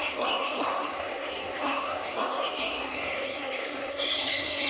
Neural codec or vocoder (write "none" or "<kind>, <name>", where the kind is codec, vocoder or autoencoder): codec, SNAC